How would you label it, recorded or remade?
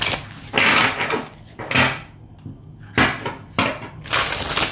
recorded